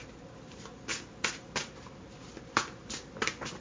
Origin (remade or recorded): recorded